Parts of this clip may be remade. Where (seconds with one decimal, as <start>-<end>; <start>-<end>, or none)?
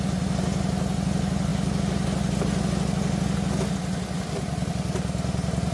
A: none